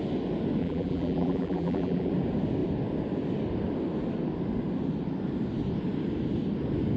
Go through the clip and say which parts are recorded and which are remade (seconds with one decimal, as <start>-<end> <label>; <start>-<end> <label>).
0.0-0.6 recorded; 0.6-2.1 remade; 2.1-7.0 recorded